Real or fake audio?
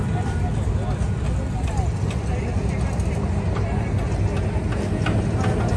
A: real